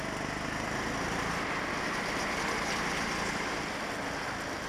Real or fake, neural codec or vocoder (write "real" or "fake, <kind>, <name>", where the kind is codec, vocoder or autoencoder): real